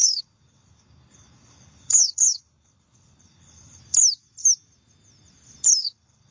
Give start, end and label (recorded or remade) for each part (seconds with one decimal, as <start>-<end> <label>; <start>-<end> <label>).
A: 0.0-3.8 remade; 3.8-5.8 recorded; 5.8-6.3 remade